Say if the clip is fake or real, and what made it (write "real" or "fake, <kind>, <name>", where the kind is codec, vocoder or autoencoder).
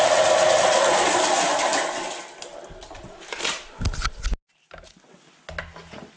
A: real